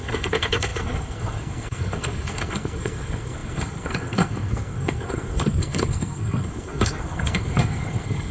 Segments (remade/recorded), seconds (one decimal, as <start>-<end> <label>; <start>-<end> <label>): 0.0-8.3 remade